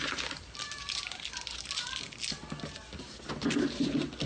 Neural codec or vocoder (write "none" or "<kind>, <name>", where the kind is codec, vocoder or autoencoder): none